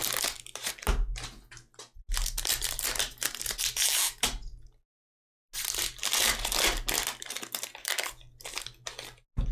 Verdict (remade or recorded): recorded